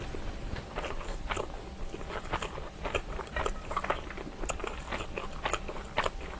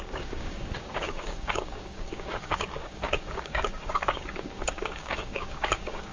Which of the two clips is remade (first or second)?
second